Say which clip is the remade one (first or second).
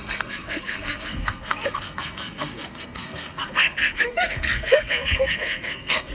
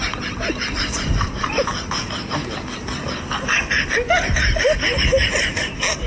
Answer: first